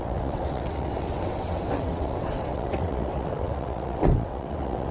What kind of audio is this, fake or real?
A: fake